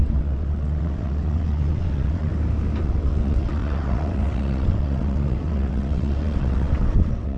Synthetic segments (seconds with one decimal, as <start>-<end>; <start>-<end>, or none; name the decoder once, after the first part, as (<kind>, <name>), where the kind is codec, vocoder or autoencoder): 0.0-2.3 (vocoder, WaveNeXt); 2.8-7.4